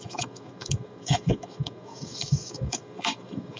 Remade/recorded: remade